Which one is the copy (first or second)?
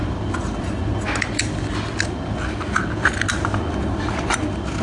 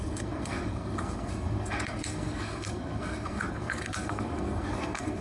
second